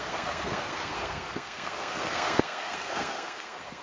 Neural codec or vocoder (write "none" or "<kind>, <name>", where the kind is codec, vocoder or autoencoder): codec, SNAC